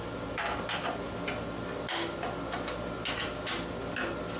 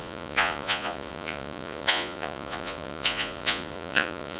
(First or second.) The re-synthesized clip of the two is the second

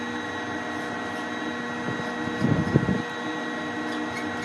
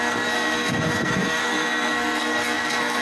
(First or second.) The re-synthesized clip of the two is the second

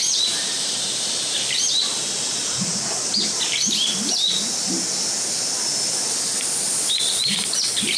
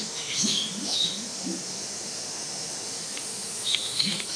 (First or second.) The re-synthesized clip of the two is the second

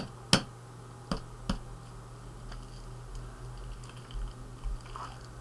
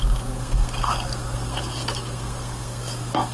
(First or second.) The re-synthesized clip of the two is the second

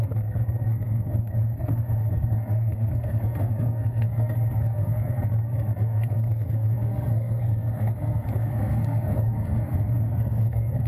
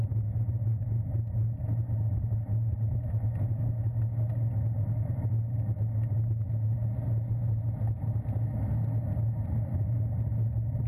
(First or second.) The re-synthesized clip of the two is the first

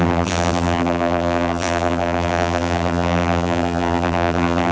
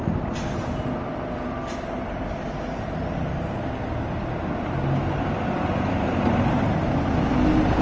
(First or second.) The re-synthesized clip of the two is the first